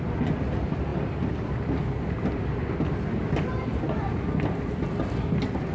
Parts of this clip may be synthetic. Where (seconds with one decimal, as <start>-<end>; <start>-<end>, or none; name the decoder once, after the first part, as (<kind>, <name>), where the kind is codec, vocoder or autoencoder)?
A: none